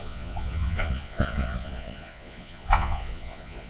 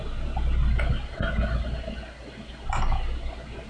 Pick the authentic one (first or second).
second